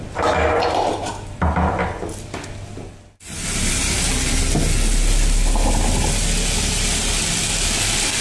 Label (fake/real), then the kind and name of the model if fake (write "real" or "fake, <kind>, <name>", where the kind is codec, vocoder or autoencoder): real